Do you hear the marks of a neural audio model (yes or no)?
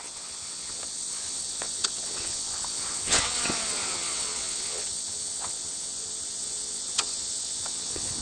yes